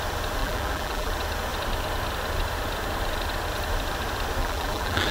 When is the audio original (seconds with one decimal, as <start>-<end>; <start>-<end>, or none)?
0.0-0.4; 1.1-4.4